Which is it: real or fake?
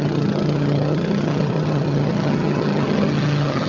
fake